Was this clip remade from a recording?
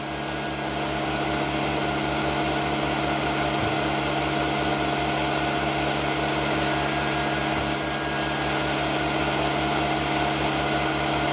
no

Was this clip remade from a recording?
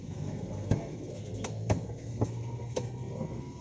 yes